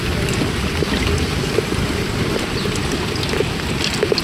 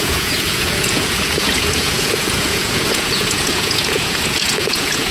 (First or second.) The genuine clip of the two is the first